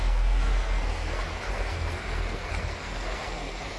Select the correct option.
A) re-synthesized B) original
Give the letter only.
A